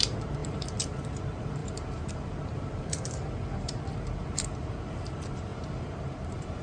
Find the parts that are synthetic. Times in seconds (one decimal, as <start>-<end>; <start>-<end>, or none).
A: 0.0-6.6